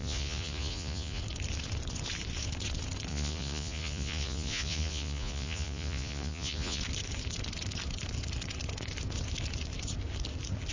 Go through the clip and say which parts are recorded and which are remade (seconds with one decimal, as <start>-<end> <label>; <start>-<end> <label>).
0.0-1.2 remade; 1.2-3.1 recorded; 3.1-6.8 remade; 6.8-10.7 recorded